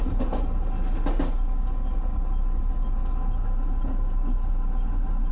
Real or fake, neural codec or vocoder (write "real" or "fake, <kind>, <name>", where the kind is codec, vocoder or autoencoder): real